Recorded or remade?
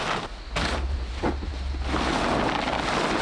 recorded